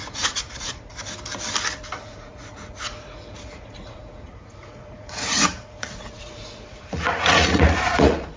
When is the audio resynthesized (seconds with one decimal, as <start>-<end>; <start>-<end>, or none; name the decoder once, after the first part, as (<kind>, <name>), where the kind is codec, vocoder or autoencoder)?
0.0-0.9 (vocoder, Vocos); 1.8-8.4